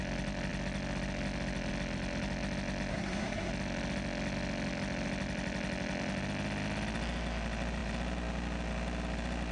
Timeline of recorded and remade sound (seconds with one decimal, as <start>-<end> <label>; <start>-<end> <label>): 0.0-2.9 recorded; 2.9-3.5 remade; 3.5-9.5 recorded